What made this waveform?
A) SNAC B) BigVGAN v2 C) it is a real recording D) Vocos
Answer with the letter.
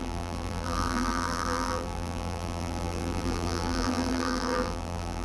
B